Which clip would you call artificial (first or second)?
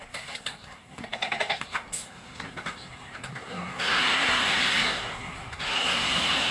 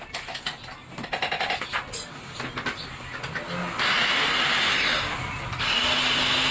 first